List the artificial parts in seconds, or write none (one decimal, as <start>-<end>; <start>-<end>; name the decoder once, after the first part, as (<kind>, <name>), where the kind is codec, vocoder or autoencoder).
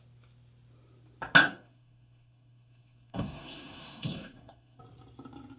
1.4-4.8 (codec, SNAC)